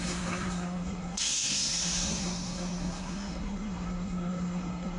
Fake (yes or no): yes